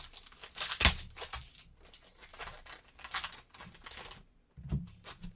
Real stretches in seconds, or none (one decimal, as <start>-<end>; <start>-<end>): 0.0-5.4